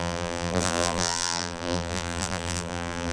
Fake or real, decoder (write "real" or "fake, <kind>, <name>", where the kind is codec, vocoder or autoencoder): fake, vocoder, BigVGAN v2